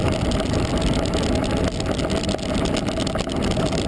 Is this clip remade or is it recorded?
recorded